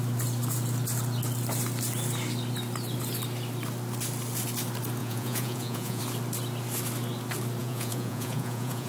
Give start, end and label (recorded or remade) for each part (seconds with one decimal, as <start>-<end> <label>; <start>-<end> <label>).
0.0-5.0 recorded; 5.0-6.0 remade; 6.0-7.6 recorded; 7.6-8.9 remade